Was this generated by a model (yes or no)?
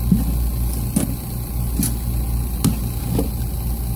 no